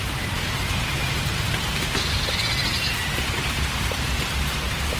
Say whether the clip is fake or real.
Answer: fake